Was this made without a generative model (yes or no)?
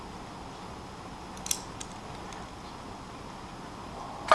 yes